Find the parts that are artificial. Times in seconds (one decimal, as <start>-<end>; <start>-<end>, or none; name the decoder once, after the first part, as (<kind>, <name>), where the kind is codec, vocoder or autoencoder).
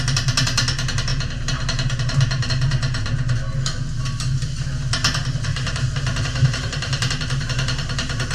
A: 1.1-2.5 (vocoder, BigVGAN v2); 5.5-7.1